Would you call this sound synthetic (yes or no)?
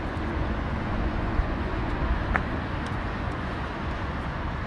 yes